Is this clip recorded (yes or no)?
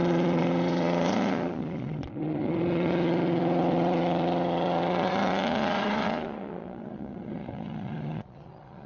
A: no